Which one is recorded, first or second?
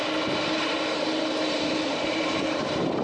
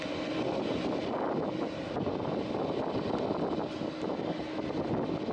second